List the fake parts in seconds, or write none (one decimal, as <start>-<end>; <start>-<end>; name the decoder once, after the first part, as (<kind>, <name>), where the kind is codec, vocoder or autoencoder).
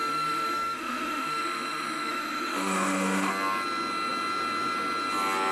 0.0-3.3 (autoencoder, DAC-VAE)